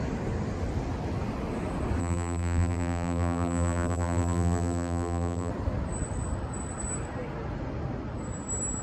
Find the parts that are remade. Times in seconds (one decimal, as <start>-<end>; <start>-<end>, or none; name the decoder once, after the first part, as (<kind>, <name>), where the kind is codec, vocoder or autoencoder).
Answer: 2.0-5.5 (vocoder, BigVGAN v2)